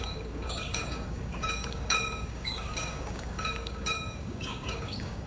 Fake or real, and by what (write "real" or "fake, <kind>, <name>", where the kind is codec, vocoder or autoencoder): fake, codec, DAC